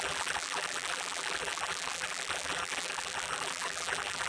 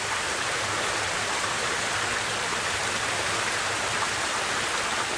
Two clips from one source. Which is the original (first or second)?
second